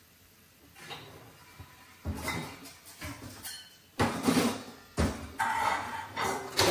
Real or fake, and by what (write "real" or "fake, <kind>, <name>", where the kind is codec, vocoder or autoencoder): real